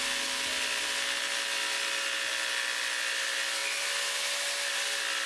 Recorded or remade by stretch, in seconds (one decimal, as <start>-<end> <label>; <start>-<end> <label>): 0.0-5.3 recorded